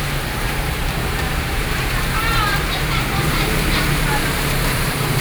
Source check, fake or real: fake